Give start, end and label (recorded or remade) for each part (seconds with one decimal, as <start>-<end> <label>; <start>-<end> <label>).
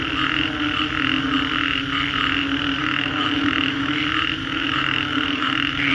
0.0-2.8 recorded; 2.8-4.0 remade; 4.0-4.4 recorded; 4.4-5.9 remade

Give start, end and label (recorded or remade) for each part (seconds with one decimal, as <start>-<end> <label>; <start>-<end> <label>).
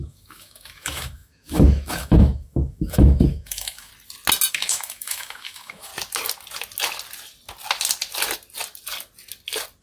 0.0-3.9 remade; 3.9-4.5 recorded; 4.5-5.9 remade; 5.9-9.8 recorded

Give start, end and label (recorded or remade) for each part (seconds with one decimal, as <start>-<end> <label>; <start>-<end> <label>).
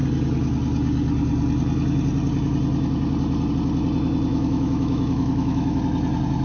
0.0-4.3 recorded; 4.3-5.8 remade; 5.8-6.4 recorded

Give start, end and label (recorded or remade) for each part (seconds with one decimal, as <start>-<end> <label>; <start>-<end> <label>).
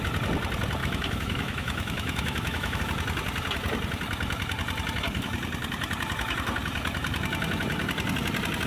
0.0-0.8 recorded; 0.8-2.8 remade; 2.8-8.7 recorded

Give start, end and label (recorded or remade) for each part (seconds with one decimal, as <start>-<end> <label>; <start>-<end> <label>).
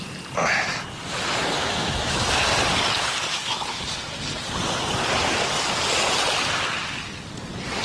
0.0-1.6 recorded; 1.6-2.3 remade; 2.3-3.3 recorded; 3.3-3.8 remade; 3.8-7.8 recorded